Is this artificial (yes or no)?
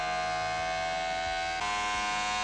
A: no